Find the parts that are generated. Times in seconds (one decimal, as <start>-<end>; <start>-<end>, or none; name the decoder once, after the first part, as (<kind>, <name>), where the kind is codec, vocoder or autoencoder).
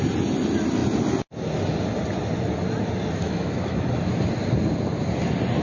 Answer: 3.2-3.9 (autoencoder, DAC-VAE)